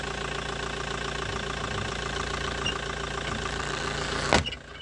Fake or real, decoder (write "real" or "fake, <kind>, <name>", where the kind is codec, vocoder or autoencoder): real